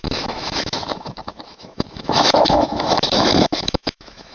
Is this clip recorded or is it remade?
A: remade